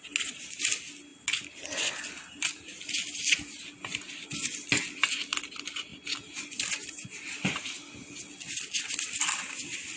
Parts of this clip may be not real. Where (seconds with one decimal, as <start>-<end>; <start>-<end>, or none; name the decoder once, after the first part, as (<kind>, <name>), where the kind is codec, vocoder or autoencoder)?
none